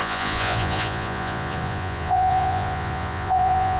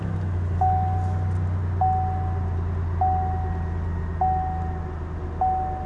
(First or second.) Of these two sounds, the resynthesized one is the first